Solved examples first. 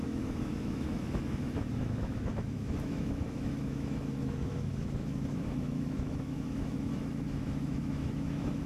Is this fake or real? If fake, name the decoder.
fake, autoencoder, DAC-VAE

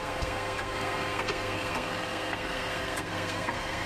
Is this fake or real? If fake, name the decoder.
fake, codec, SNAC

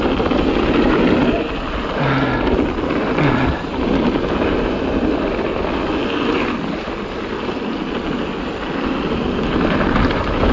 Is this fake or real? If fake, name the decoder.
real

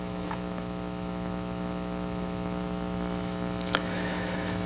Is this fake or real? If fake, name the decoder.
fake, autoencoder, DAC-VAE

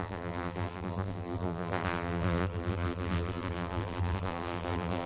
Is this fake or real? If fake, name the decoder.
fake, vocoder, BigVGAN v2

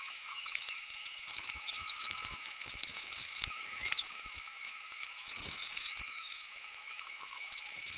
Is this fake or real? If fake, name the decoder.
fake, autoencoder, DAC-VAE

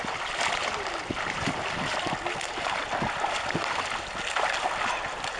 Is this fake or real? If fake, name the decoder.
real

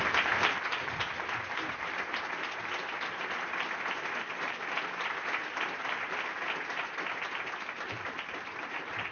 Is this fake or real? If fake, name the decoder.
real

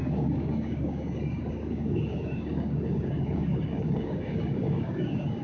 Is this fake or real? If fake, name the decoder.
fake, codec, DAC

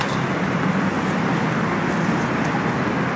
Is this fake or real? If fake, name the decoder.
real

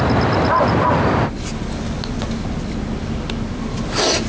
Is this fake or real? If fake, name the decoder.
real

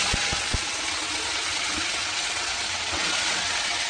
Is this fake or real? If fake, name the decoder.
fake, vocoder, WaveNeXt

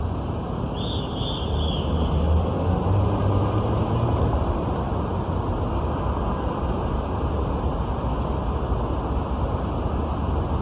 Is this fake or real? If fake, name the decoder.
real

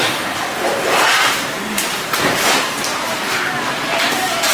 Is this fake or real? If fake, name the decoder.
fake, vocoder, BigVGAN v2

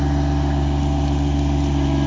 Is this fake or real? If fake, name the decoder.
real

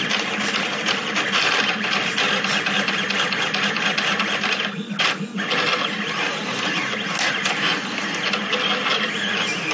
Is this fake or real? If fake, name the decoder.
real